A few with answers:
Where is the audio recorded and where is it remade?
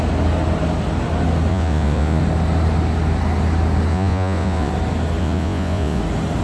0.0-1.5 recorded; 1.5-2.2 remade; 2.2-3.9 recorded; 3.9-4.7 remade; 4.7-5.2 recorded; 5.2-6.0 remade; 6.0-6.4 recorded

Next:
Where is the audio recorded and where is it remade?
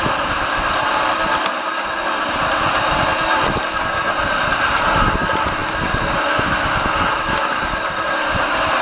0.0-8.8 recorded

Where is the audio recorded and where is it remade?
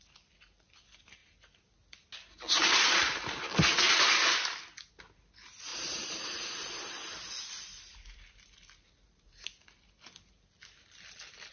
0.0-11.5 recorded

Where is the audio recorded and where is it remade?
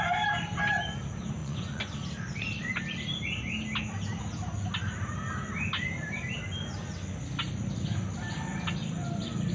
0.0-1.4 recorded; 1.4-1.9 remade; 1.9-9.5 recorded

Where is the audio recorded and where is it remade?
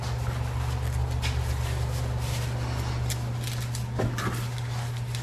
0.0-5.2 recorded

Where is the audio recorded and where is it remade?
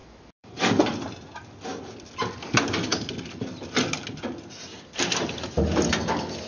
0.0-1.6 remade; 1.6-6.5 recorded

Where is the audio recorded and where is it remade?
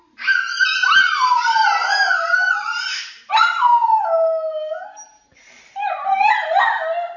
0.0-0.8 recorded; 0.8-3.3 remade; 3.3-5.1 recorded; 5.1-6.6 remade; 6.6-7.2 recorded